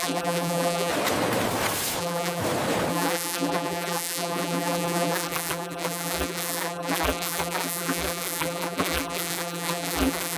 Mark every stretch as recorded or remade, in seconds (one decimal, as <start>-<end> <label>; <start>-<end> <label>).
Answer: 0.0-0.9 remade; 0.9-2.0 recorded; 2.0-2.4 remade; 2.4-2.9 recorded; 2.9-10.4 remade